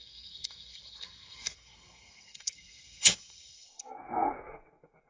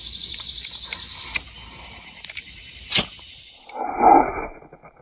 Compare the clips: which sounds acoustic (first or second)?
second